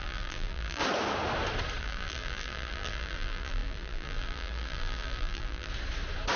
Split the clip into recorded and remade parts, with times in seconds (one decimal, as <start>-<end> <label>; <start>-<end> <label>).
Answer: 0.0-0.8 remade; 0.8-1.8 recorded; 1.8-5.7 remade; 5.7-6.4 recorded